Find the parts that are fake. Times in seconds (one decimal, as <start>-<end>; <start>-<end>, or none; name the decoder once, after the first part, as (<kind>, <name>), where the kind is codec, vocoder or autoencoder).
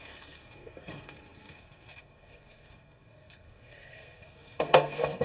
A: 0.0-5.2 (codec, SNAC)